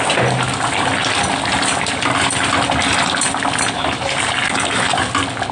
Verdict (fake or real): real